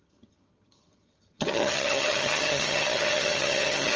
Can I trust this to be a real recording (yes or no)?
no